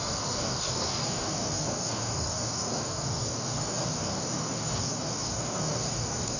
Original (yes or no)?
no